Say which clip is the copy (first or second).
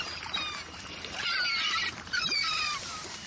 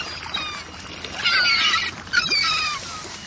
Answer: first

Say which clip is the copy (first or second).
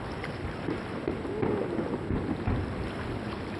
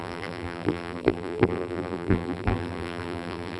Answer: second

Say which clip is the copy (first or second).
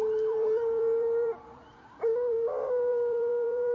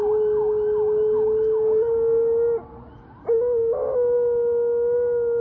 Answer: first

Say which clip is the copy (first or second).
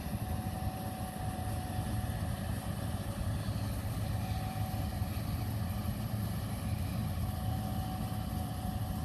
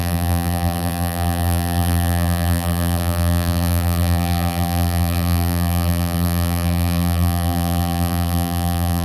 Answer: second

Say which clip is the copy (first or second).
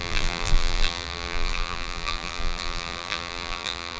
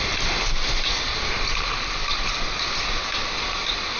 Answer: first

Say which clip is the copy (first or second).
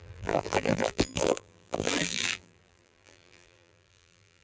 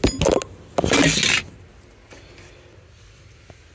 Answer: first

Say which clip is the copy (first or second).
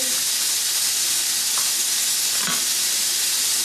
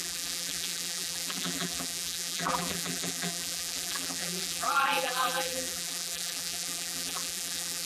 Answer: second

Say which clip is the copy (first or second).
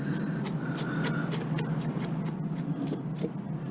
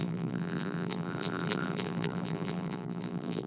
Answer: second